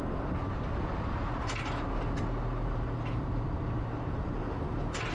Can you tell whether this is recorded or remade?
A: recorded